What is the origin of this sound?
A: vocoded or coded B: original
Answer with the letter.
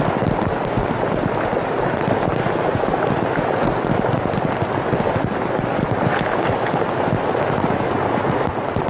B